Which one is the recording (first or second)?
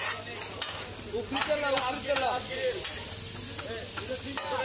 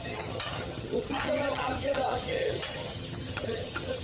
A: first